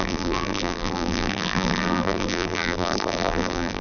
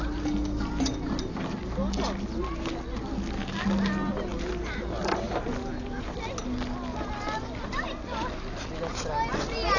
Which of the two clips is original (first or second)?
second